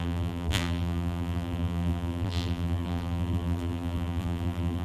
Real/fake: fake